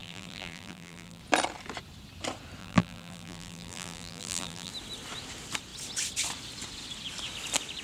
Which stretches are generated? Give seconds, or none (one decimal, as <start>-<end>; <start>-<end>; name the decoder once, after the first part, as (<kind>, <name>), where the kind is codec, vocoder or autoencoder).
0.0-1.2 (vocoder, BigVGAN v2); 2.6-4.7